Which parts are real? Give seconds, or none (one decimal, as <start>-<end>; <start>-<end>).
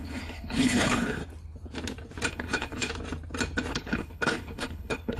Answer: 1.2-2.3; 2.9-3.7